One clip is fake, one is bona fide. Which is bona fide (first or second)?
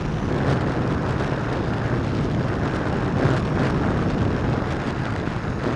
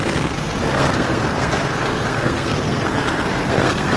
first